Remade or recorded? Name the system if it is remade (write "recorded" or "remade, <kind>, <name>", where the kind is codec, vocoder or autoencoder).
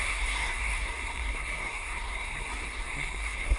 remade, codec, SNAC